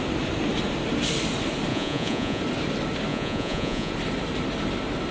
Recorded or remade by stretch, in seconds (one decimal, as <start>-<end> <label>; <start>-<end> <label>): 0.0-1.7 recorded; 1.7-2.4 remade; 2.4-3.1 recorded; 3.1-3.9 remade; 3.9-5.1 recorded

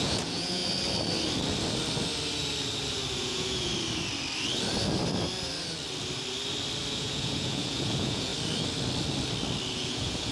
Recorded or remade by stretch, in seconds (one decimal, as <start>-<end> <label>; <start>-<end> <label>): 0.0-0.6 remade; 0.6-3.2 recorded; 3.2-3.7 remade; 3.7-6.9 recorded; 6.9-8.3 remade; 8.3-9.7 recorded; 9.7-10.3 remade